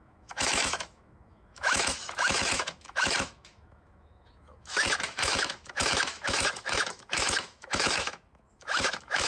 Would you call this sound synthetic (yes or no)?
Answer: yes